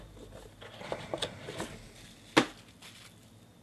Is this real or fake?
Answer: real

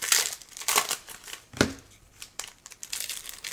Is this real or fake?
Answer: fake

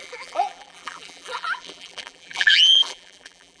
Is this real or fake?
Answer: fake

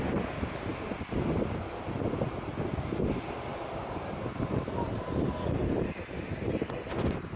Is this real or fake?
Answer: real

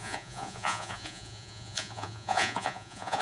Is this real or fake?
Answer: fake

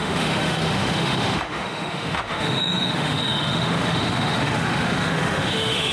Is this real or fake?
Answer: fake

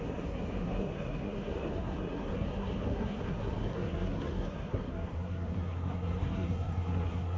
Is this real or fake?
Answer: fake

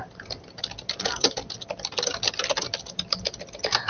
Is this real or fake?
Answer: real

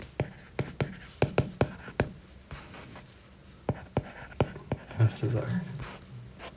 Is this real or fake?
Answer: real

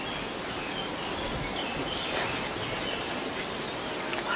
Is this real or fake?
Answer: real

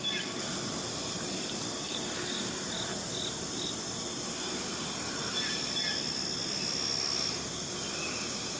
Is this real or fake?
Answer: real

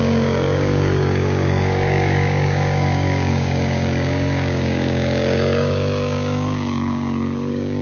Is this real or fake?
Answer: fake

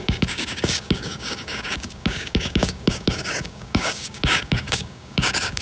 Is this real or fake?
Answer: fake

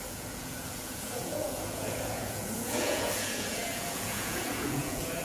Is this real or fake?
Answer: fake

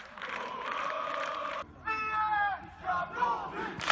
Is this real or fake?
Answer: fake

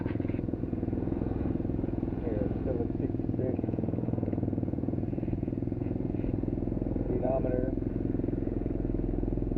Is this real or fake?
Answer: fake